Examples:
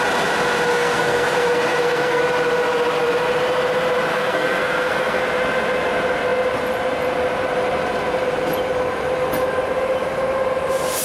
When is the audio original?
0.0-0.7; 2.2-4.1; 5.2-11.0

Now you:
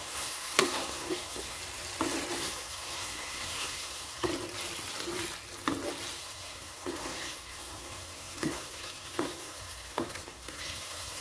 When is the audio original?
1.6-2.4; 4.3-6.2

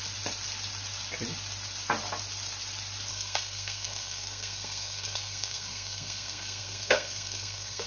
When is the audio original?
0.0-3.1

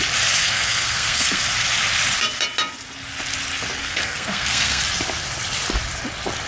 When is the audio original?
0.0-0.4; 1.4-3.8; 4.8-6.5